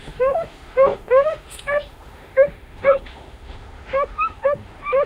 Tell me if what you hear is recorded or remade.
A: remade